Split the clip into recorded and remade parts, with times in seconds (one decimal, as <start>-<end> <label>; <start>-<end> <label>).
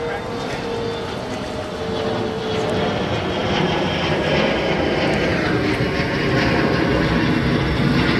0.0-8.2 recorded